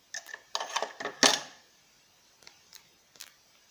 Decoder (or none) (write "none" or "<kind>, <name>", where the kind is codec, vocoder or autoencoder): none